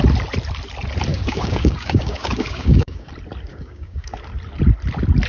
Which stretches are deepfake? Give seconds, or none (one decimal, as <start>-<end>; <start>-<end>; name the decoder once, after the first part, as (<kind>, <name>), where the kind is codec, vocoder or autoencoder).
1.1-3.1 (codec, DAC); 3.5-4.1